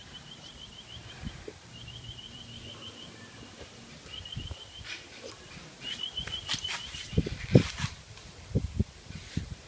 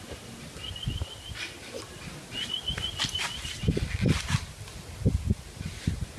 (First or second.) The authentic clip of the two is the second